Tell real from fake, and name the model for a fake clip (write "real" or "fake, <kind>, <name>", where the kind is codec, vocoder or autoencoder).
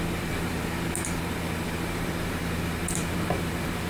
fake, vocoder, BigVGAN v2